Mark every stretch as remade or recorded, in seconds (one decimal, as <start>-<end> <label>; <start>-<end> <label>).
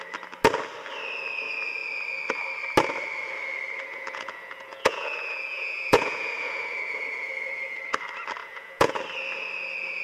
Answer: 0.0-3.9 recorded; 3.9-7.8 remade; 7.8-8.4 recorded; 8.4-9.0 remade; 9.0-10.0 recorded